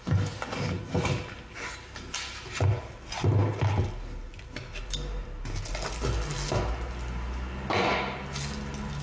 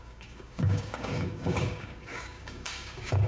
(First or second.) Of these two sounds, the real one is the first